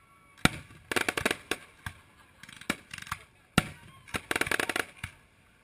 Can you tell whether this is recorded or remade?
recorded